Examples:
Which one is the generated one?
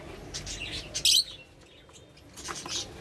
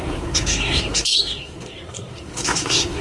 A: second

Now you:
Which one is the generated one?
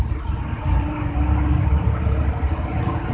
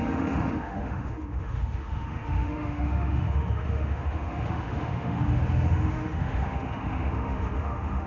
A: second